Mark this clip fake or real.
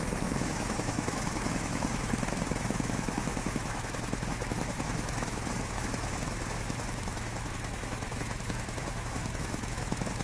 fake